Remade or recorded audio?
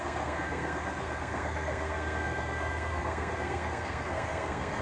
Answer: remade